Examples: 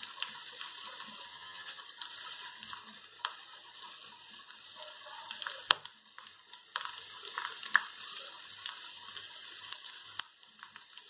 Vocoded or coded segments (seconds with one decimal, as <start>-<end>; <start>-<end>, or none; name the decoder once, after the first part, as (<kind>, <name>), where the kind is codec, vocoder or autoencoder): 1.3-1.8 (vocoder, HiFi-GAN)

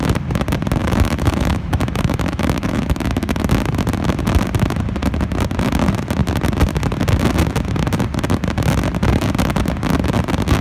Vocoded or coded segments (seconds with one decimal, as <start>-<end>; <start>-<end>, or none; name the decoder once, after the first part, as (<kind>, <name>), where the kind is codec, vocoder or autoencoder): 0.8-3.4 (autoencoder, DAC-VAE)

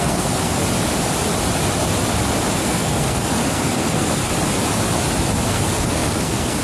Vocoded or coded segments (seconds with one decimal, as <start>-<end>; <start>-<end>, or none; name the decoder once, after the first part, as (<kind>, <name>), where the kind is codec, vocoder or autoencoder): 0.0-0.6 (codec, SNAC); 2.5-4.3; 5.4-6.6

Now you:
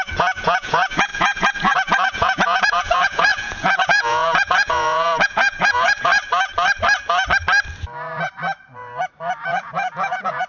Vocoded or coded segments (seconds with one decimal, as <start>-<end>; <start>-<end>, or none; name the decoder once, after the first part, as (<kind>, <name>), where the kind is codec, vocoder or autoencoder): 0.0-6.1 (vocoder, Vocos); 9.4-10.5